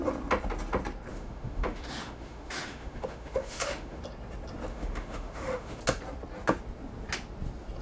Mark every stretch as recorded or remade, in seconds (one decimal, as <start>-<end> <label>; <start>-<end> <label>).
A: 0.0-1.1 recorded; 1.1-4.0 remade; 4.0-4.7 recorded; 4.7-5.8 remade; 5.8-7.8 recorded